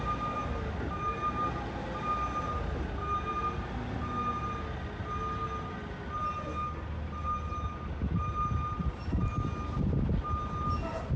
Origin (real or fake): real